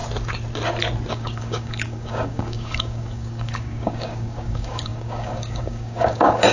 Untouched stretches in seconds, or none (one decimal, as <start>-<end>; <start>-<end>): 0.0-1.1

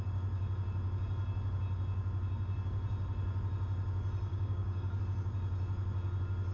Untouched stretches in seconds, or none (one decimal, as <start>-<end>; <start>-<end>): 0.0-4.3; 5.0-6.5

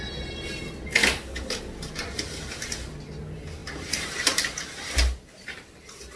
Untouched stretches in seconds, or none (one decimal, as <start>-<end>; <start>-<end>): 0.0-1.0; 1.6-6.2

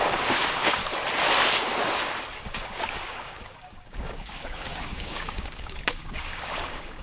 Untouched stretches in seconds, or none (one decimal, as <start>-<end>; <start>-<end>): 0.8-2.3

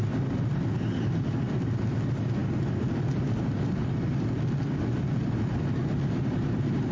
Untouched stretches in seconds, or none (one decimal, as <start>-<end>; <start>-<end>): 0.0-6.9

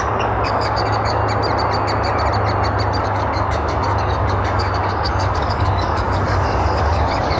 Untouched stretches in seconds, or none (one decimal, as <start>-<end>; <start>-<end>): 1.2-3.0

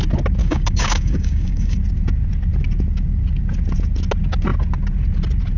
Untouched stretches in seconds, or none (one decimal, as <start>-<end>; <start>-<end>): 0.0-0.4; 1.8-5.6